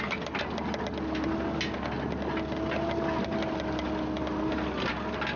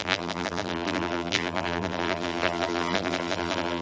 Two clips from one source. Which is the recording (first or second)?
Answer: first